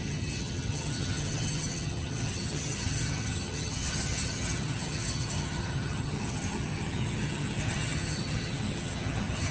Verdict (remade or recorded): remade